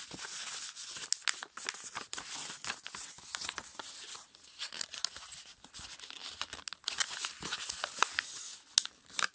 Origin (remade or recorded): recorded